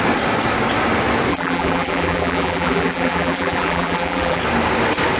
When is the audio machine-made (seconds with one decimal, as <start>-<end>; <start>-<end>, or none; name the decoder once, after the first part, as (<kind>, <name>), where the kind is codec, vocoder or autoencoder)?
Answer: 1.3-4.4 (vocoder, BigVGAN v2)